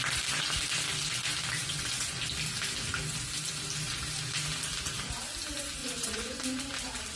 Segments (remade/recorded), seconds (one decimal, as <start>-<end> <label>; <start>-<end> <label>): 0.0-1.6 recorded; 1.6-2.2 remade; 2.2-5.8 recorded; 5.8-6.4 remade; 6.4-7.2 recorded